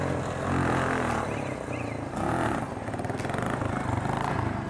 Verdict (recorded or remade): recorded